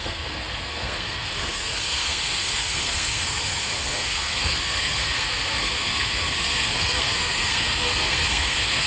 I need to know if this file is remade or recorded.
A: remade